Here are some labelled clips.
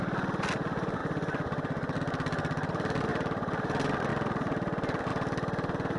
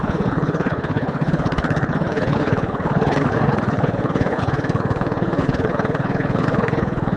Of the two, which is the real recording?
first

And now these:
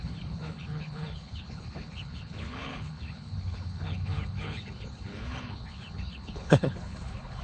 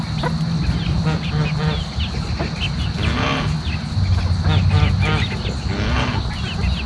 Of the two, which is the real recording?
second